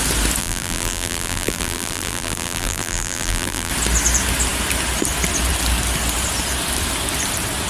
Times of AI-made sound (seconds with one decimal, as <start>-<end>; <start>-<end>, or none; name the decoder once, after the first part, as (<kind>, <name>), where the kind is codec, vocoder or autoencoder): 0.4-3.7 (vocoder, BigVGAN v2)